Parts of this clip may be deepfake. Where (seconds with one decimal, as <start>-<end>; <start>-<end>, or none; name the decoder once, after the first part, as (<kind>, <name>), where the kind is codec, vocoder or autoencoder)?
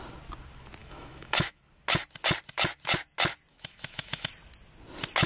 0.8-1.6 (autoencoder, DAC-VAE); 3.5-4.3